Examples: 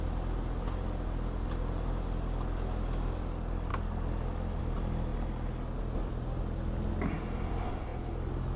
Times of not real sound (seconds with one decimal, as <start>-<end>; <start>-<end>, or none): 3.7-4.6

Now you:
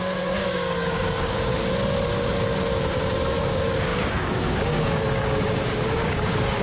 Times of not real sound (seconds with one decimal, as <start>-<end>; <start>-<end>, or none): 0.0-1.5; 3.4-6.6

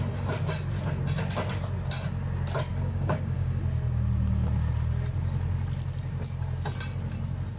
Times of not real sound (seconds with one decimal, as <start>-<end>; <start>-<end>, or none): 2.7-3.6